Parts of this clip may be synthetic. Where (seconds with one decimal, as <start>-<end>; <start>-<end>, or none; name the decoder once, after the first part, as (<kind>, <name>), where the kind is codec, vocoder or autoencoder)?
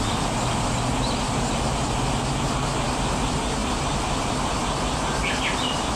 none